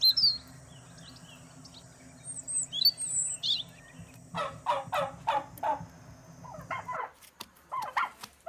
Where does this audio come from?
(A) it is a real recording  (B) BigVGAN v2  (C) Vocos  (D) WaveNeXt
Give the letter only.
A